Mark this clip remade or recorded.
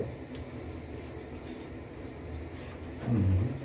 recorded